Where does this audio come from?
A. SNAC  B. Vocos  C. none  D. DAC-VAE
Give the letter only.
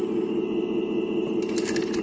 C